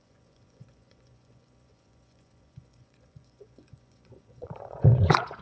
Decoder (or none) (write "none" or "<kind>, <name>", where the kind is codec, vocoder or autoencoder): vocoder, Vocos